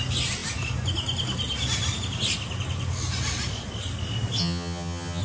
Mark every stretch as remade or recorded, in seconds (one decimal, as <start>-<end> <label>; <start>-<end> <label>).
0.0-4.4 recorded; 4.4-5.2 remade